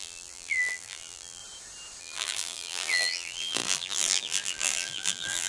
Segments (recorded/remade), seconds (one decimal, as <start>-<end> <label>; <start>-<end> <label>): 0.0-1.4 remade; 1.4-2.0 recorded; 2.0-5.5 remade